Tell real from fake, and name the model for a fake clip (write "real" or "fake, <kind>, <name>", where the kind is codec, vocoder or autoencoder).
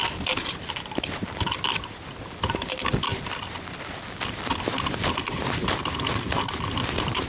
real